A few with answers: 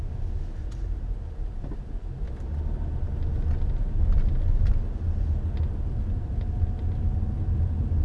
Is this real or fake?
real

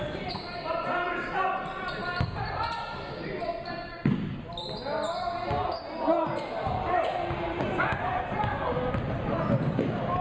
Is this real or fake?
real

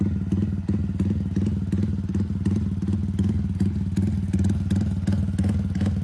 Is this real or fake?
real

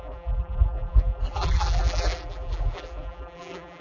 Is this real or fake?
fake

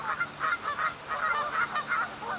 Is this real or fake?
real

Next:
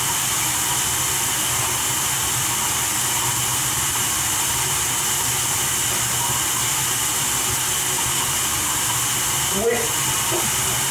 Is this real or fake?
real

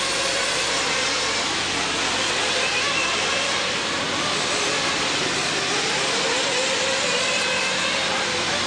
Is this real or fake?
fake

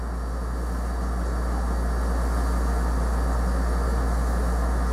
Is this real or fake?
real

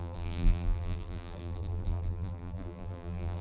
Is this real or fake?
fake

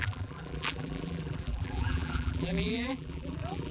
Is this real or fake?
fake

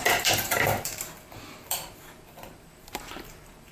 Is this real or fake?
fake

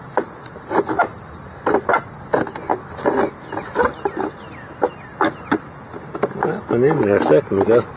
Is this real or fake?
real